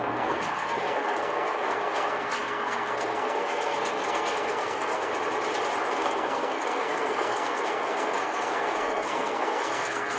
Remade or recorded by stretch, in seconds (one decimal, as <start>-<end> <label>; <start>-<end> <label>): 0.0-5.1 remade; 5.1-5.9 recorded; 5.9-10.2 remade

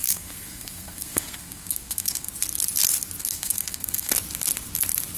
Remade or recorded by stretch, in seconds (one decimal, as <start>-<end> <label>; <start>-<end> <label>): 0.0-2.3 remade; 2.3-3.2 recorded; 3.2-4.1 remade; 4.1-5.2 recorded